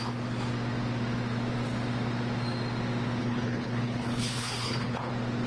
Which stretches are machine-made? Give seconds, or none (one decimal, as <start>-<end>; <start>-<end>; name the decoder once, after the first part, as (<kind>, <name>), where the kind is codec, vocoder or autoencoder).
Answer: 3.2-5.1 (codec, HILCodec)